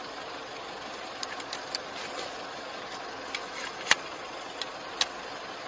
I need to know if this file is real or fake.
real